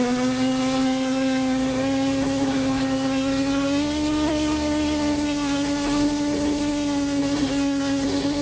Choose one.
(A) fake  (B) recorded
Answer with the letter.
A